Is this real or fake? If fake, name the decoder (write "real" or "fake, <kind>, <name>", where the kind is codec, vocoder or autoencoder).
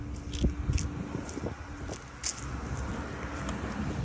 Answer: real